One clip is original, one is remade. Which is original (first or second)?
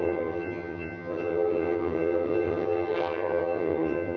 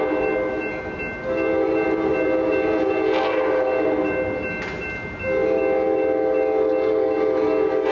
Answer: second